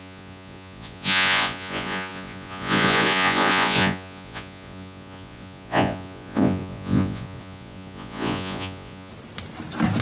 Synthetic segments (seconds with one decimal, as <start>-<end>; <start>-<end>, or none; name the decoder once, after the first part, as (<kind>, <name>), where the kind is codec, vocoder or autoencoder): 0.0-9.1 (vocoder, Vocos)